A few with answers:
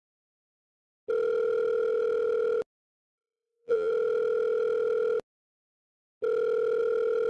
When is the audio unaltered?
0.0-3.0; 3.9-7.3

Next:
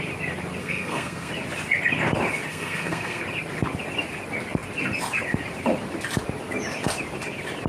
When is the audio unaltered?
0.0-0.6; 1.3-2.5; 3.2-7.7

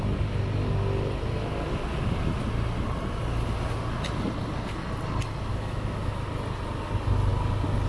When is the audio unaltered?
0.0-5.5; 6.1-7.9

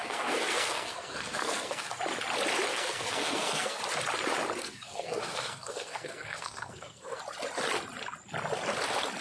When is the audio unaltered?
2.0-2.7; 3.8-4.6; 7.2-9.2